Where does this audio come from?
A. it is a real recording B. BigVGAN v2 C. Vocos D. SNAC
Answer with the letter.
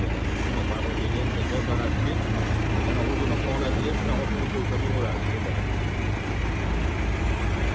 A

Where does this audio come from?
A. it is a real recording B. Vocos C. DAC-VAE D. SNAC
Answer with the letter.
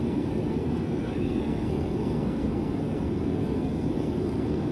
D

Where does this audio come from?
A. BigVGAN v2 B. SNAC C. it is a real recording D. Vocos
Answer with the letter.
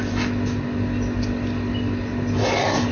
C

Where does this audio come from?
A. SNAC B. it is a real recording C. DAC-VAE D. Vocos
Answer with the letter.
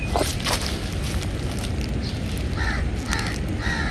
B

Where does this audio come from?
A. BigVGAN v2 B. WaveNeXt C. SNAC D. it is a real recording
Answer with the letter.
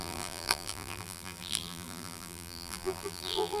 A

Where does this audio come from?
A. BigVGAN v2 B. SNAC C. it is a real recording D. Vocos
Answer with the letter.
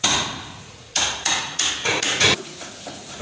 D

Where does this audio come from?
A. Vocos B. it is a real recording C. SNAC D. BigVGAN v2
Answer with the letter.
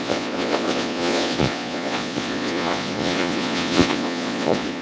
A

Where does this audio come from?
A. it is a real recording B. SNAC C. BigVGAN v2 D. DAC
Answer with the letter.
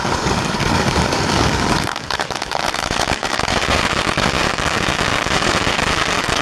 D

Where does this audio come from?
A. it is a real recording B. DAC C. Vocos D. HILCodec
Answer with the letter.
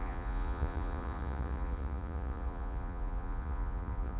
C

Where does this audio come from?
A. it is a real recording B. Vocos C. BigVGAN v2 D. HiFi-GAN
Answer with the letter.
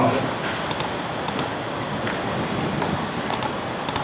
A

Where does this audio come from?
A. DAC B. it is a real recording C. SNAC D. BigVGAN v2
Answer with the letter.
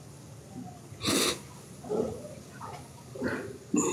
B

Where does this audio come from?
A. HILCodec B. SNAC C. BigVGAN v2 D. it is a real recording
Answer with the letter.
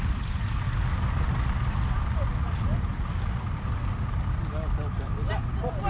D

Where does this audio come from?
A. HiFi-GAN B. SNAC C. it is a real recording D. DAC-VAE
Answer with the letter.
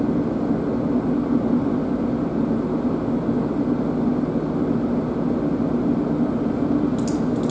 C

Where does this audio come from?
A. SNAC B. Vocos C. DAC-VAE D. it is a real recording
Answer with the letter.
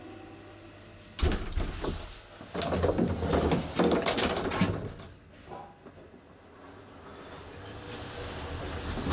D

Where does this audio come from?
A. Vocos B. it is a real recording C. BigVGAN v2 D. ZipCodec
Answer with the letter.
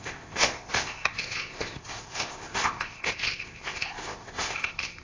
D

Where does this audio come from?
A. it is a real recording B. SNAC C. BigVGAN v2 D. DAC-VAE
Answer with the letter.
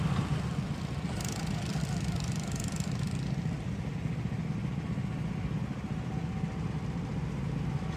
A